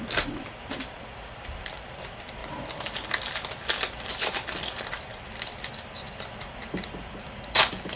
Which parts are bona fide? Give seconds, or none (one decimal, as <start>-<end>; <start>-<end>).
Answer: 2.4-4.1

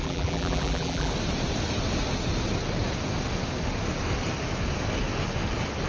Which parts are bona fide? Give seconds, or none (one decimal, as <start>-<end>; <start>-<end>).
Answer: 1.1-5.9

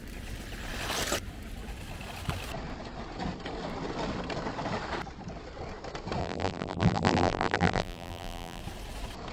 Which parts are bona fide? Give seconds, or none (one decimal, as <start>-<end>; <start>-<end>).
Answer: 0.0-6.2; 8.6-9.3

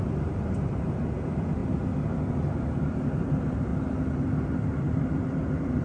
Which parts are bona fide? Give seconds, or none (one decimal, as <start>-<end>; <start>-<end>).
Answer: 1.6-2.3; 3.7-4.6